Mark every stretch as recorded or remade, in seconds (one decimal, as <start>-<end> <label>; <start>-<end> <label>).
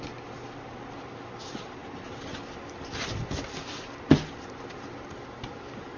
0.0-6.0 recorded